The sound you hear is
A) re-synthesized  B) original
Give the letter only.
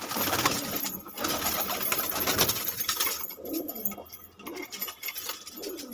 B